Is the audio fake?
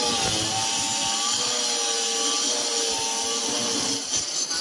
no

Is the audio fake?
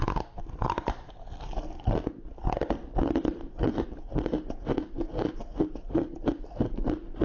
no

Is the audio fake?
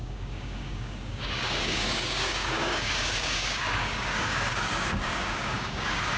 yes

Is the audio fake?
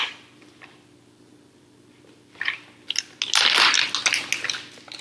no